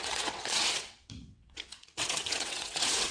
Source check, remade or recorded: remade